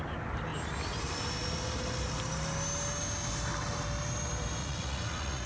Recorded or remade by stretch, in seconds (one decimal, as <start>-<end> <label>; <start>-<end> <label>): 0.0-4.6 recorded; 4.6-5.5 remade